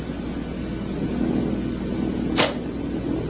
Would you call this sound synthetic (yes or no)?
no